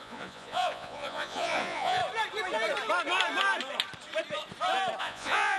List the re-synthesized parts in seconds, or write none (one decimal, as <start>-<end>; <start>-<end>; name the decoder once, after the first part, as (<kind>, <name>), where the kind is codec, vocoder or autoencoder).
0.0-2.0 (vocoder, Vocos); 5.0-5.6